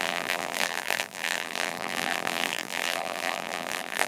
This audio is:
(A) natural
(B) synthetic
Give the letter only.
B